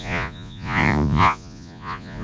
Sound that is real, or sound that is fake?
fake